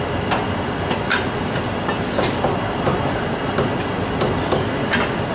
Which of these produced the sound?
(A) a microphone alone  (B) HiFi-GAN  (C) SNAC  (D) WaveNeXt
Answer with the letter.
A